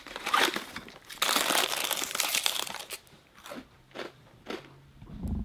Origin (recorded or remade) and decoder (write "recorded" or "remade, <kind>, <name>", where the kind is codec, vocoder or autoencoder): remade, vocoder, BigVGAN v2